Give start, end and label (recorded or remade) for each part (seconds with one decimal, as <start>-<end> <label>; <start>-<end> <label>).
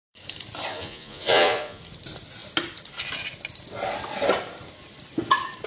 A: 0.0-0.7 recorded; 0.7-1.8 remade; 1.8-5.7 recorded